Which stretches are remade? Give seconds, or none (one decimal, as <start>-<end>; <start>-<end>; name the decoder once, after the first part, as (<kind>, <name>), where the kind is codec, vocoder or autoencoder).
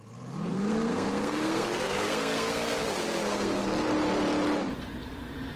0.5-3.9 (codec, SNAC)